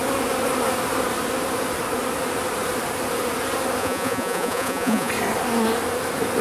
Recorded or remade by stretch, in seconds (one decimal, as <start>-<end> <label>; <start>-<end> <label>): 0.0-3.8 recorded; 3.8-5.1 remade; 5.1-6.4 recorded